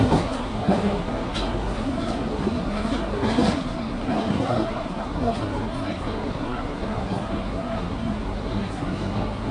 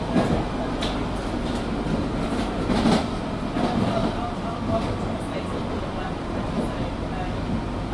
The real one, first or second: second